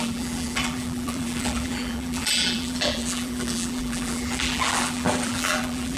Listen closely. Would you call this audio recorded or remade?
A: remade